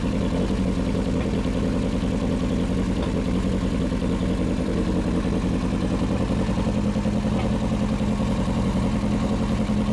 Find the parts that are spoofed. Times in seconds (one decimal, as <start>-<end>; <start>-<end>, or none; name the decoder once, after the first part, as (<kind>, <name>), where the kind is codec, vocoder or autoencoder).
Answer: none